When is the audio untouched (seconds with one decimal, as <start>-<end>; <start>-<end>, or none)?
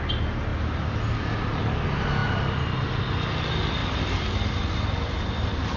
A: 0.0-5.8